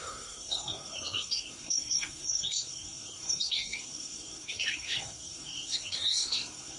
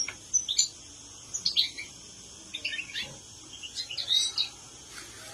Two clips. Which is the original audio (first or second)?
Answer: second